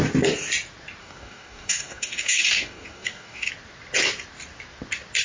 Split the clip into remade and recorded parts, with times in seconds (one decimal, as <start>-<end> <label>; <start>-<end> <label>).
0.0-1.0 recorded; 1.0-3.5 remade; 3.5-5.2 recorded